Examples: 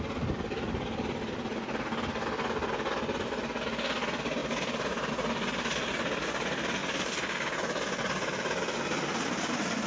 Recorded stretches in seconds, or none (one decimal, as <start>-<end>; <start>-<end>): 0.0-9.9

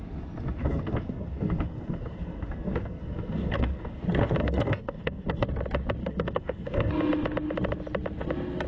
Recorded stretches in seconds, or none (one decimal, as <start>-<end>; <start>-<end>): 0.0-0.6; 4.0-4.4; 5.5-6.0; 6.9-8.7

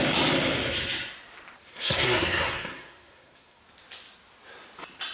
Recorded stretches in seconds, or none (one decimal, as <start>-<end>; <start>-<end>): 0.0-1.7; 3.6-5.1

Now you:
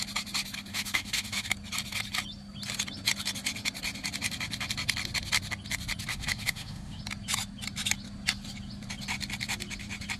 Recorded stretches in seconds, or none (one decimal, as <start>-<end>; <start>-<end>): 0.0-0.7; 1.5-6.1; 7.0-10.2

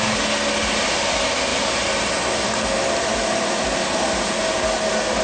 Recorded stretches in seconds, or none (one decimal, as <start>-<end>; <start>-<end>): 0.0-1.5; 2.1-5.2

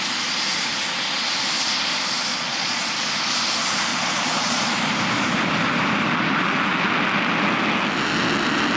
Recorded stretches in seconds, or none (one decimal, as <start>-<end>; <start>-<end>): 0.0-2.3; 2.8-3.9; 4.7-8.8

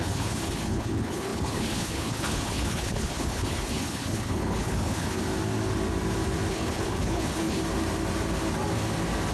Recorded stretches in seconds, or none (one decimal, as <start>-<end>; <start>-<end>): 5.2-6.5; 7.6-9.3